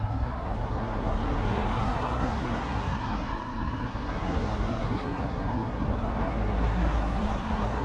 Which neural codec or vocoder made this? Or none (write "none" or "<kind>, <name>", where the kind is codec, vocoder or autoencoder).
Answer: codec, SNAC